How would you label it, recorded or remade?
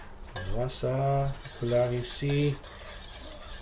recorded